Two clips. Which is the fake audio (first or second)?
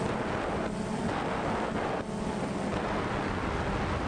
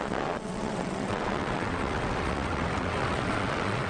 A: second